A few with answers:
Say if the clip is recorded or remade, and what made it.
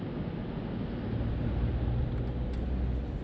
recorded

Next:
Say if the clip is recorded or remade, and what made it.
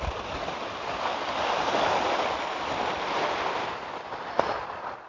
recorded